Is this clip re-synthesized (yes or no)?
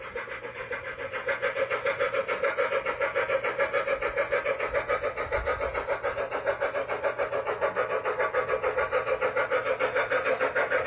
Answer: no